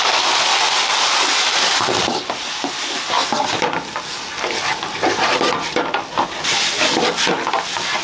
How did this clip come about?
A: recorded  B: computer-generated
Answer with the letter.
A